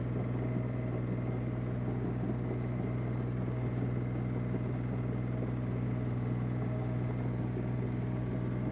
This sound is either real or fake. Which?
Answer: real